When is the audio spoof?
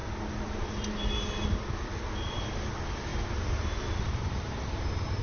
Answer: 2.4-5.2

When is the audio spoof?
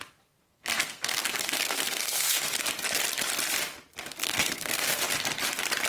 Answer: 0.4-2.4; 4.2-5.0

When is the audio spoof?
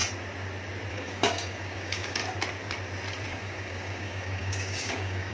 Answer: 0.9-2.2; 3.3-5.3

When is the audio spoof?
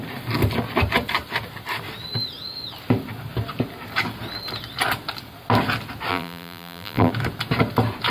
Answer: 6.1-7.1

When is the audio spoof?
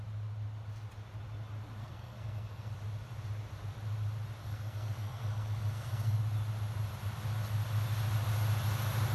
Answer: 1.8-2.7; 4.4-6.2